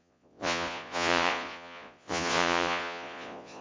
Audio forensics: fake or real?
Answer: fake